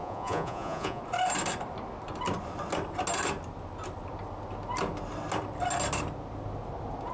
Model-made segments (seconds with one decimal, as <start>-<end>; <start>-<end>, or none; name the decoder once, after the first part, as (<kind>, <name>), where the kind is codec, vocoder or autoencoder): 0.0-1.0 (vocoder, Vocos)